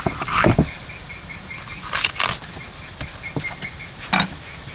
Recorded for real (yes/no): yes